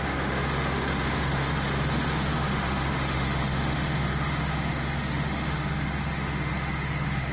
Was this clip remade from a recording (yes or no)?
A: yes